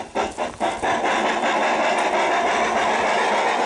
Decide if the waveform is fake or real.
real